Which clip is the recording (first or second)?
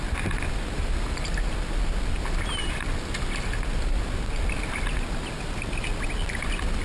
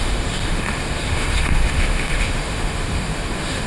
first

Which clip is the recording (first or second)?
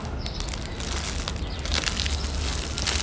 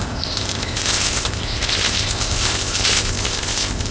first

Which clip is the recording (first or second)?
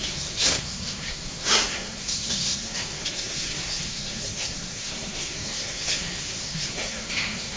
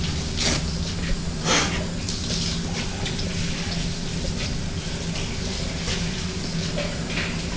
second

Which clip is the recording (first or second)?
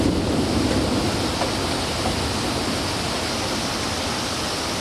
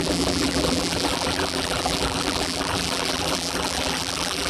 first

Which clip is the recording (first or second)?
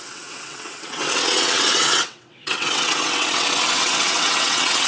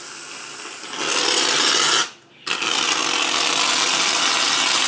second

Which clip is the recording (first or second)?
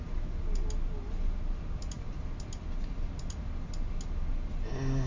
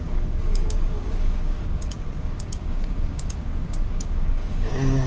first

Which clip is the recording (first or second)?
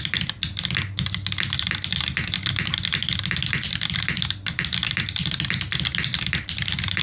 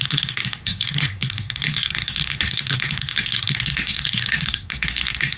first